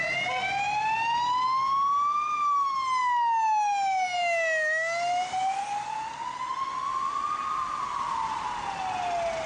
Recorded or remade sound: recorded